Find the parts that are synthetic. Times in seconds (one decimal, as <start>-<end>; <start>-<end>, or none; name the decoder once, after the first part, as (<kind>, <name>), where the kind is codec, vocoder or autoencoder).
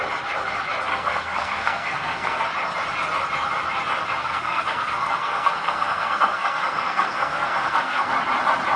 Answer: 0.9-2.4 (codec, SNAC); 4.2-8.1